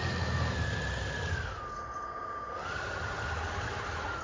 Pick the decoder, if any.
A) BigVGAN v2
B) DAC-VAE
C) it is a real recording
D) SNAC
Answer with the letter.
C